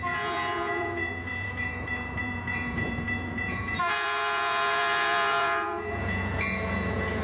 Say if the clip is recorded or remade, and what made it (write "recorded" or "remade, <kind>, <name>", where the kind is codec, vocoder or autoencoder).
remade, vocoder, Vocos